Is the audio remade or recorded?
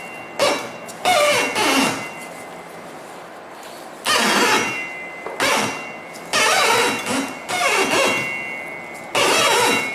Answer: recorded